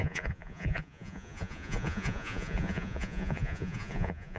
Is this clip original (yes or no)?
no